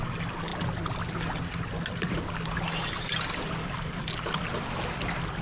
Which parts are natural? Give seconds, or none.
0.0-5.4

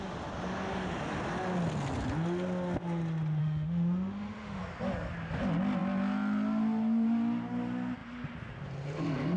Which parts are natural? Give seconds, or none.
0.0-3.4; 4.6-9.4

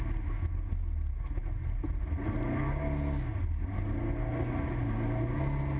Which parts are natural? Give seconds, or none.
0.0-5.8

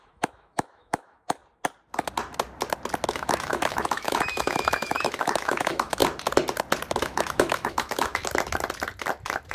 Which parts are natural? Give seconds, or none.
1.4-3.1; 6.0-7.0; 8.2-9.5